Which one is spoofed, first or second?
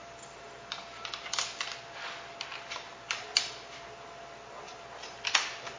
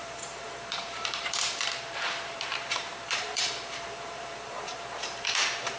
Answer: second